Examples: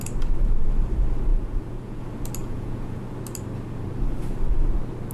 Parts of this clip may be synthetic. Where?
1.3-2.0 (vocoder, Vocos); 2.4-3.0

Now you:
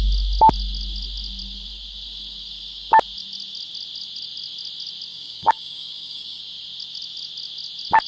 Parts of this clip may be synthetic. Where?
5.1-6.4 (codec, DAC)

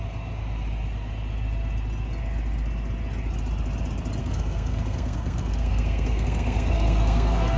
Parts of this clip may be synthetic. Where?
4.2-7.6 (codec, SNAC)

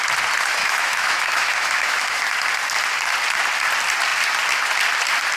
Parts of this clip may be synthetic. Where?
0.6-2.2 (autoencoder, DAC-VAE)

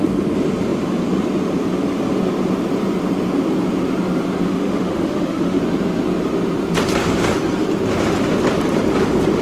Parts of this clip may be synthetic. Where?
4.5-5.6 (autoencoder, DAC-VAE)